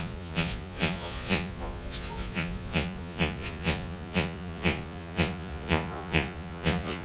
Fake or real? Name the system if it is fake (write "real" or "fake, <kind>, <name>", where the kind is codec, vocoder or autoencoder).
fake, vocoder, Vocos